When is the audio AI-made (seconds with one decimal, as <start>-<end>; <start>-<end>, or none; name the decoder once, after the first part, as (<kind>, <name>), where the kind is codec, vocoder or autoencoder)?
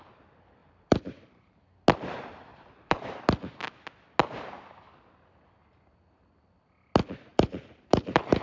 0.6-1.6 (vocoder, BigVGAN v2); 2.5-3.2; 7.3-8.4